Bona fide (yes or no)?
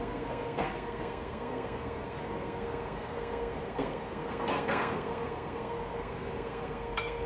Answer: no